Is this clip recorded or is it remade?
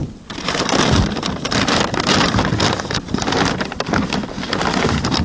recorded